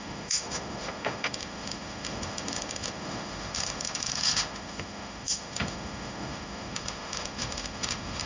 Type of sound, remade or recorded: remade